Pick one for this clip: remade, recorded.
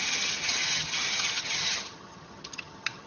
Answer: remade